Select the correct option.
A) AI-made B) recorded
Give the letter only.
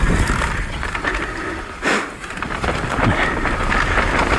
B